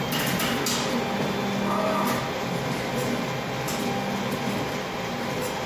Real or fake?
real